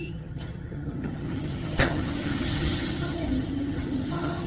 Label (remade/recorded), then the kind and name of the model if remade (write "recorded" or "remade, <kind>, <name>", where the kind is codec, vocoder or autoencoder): remade, vocoder, HiFi-GAN